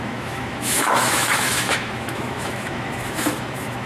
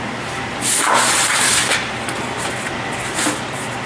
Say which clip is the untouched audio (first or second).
second